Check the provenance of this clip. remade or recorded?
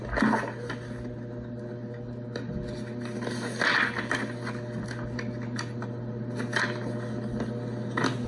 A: recorded